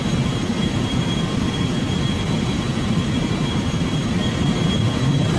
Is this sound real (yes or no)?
no